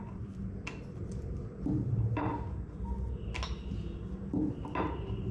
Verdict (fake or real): real